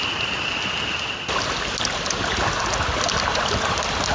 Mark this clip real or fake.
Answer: real